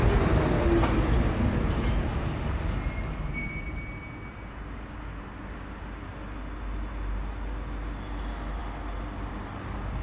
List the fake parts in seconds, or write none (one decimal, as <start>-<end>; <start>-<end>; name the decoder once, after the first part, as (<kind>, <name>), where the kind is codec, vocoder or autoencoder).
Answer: none